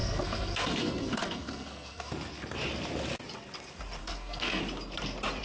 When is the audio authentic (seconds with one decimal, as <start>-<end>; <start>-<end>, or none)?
2.1-4.0; 4.6-5.4